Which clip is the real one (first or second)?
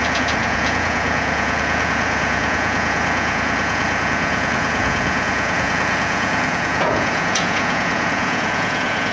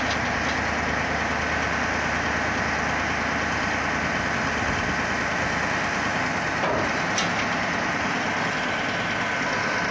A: second